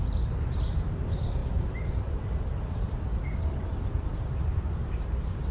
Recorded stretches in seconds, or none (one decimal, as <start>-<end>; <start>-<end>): 0.0-5.5